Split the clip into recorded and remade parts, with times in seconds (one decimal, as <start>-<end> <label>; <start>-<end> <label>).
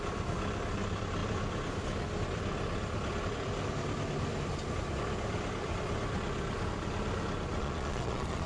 0.0-7.6 recorded; 7.6-8.5 remade